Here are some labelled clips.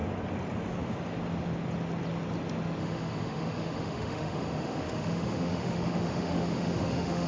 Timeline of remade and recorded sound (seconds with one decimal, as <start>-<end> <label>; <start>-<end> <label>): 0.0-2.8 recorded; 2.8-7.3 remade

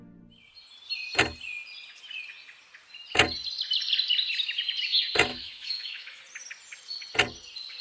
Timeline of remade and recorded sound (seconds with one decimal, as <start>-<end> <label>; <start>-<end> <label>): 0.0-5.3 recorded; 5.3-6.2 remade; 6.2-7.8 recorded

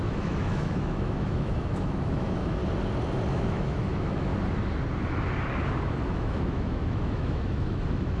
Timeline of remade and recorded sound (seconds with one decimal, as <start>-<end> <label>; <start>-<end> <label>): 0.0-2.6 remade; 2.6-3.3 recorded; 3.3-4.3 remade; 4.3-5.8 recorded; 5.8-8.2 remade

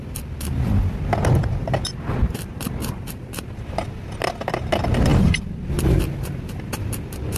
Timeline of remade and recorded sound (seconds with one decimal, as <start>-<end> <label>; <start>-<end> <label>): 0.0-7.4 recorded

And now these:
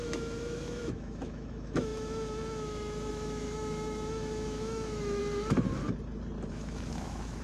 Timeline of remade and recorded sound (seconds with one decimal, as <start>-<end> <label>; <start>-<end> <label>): 0.0-5.2 remade; 5.2-6.5 recorded; 6.5-7.4 remade